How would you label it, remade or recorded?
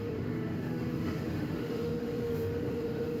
remade